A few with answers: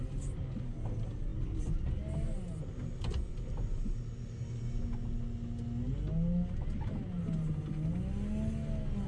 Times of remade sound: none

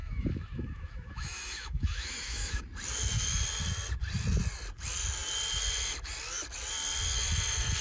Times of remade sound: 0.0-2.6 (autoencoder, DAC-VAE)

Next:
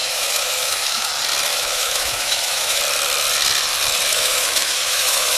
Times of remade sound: 0.0-1.1 (autoencoder, DAC-VAE); 1.5-2.8; 4.1-5.4

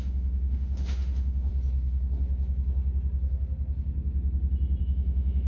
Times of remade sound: 0.0-1.5 (autoencoder, DAC-VAE); 4.8-5.5